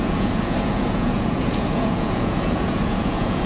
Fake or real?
fake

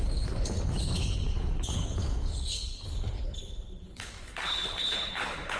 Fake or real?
fake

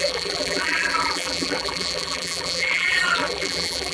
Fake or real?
fake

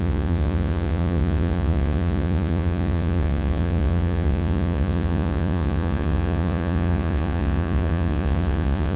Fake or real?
fake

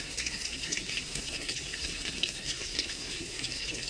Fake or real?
fake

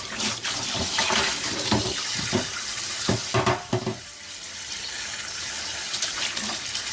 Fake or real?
real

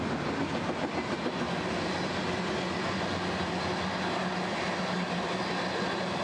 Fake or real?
real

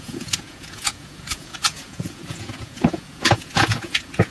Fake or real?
fake